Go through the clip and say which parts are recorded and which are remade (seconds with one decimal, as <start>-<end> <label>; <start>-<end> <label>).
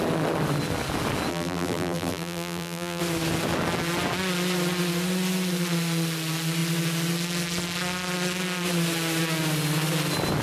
0.0-1.3 recorded; 1.3-3.0 remade; 3.0-10.4 recorded